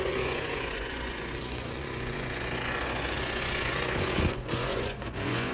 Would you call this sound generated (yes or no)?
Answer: yes